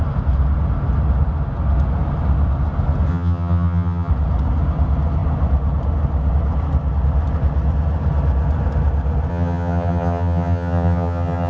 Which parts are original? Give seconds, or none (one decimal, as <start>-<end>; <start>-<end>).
0.0-3.1; 4.1-9.3